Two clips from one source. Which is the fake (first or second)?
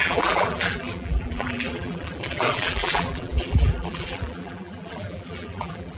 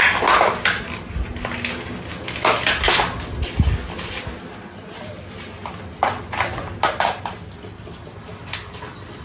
first